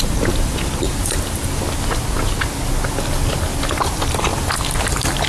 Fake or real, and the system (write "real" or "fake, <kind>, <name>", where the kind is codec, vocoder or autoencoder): real